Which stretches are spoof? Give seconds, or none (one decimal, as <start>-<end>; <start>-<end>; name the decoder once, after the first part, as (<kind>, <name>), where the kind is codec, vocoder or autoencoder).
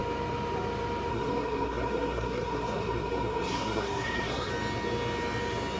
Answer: 1.1-4.5 (codec, SNAC)